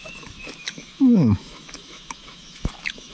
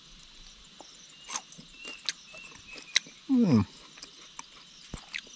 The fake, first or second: first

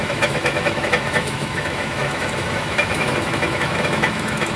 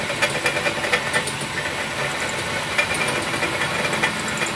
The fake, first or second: first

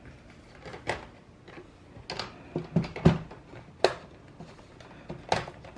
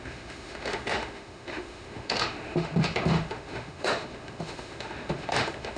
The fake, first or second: second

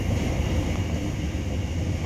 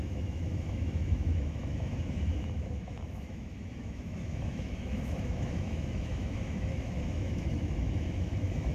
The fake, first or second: second